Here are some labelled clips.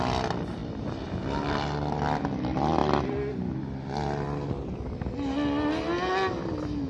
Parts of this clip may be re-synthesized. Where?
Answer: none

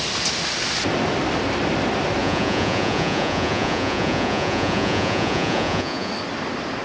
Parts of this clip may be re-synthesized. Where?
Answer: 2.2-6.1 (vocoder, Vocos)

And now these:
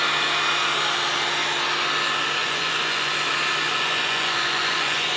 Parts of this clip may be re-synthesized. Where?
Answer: 2.4-3.1 (vocoder, Vocos); 3.6-5.2

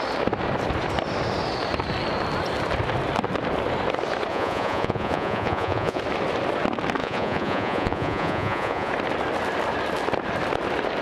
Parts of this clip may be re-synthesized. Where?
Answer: 4.3-6.0 (vocoder, Vocos); 7.0-8.9

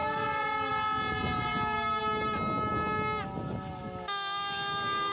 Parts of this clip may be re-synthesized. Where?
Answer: none

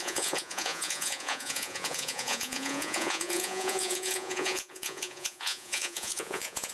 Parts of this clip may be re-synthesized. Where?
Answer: 0.0-6.7 (vocoder, Vocos)

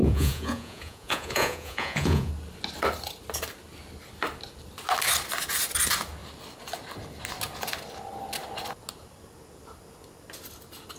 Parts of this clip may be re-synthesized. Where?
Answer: 0.0-2.3 (vocoder, Vocos)